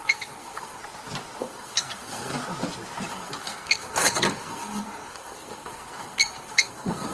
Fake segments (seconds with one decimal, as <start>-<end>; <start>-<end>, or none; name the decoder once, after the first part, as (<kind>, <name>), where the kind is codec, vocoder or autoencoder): 0.0-0.8 (codec, SNAC); 1.4-2.3; 3.1-7.1